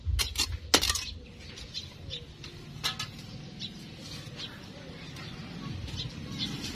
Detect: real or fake real